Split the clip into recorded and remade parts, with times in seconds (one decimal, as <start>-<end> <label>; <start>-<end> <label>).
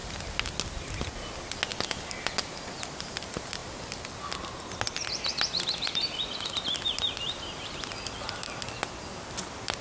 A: 0.0-9.8 recorded